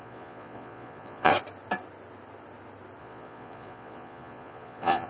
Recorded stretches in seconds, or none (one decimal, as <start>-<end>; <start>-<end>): 1.3-3.0